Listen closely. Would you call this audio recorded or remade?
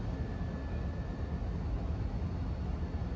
recorded